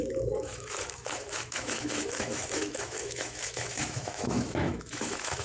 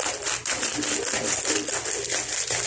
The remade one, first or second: first